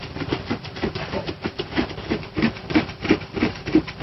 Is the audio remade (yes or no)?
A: yes